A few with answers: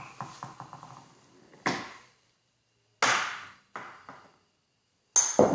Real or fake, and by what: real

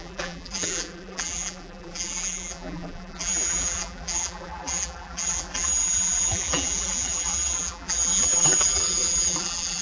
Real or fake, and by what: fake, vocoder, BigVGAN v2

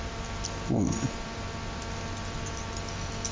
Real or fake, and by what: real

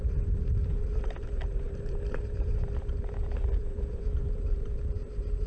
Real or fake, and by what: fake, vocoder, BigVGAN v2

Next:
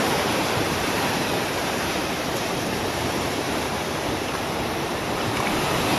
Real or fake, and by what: fake, vocoder, BigVGAN v2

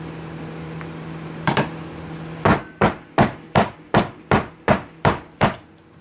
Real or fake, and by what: fake, vocoder, BigVGAN v2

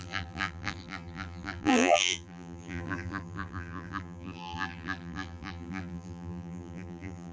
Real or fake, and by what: fake, vocoder, BigVGAN v2